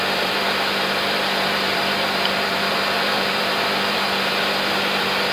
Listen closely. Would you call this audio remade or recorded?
remade